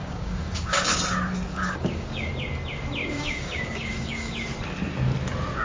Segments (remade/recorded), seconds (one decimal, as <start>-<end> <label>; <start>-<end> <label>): 0.0-1.0 remade; 1.0-1.5 recorded; 1.5-2.3 remade; 2.3-3.0 recorded; 3.0-4.3 remade; 4.3-5.6 recorded